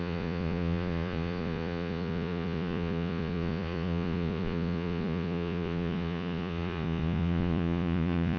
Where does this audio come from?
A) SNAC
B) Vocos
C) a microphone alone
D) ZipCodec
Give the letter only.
B